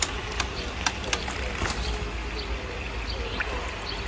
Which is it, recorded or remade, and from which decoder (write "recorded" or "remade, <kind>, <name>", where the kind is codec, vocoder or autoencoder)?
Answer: recorded